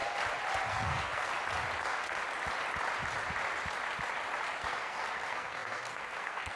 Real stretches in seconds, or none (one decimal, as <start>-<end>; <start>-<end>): 0.0-0.7; 1.3-1.8; 2.2-4.6